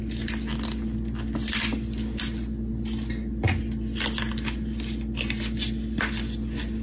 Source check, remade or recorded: recorded